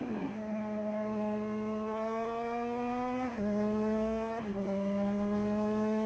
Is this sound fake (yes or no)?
yes